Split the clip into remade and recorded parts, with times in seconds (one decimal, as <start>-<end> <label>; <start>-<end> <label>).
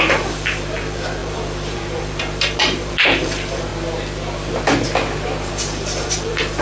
0.0-3.7 remade; 3.7-5.5 recorded; 5.5-6.6 remade